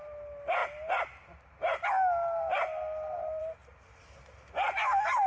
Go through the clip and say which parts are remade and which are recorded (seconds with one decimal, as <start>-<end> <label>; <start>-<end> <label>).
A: 0.0-5.3 recorded